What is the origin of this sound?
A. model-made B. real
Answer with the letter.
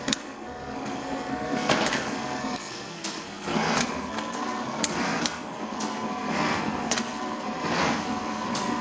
A